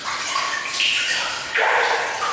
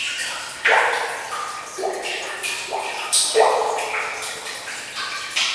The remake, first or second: first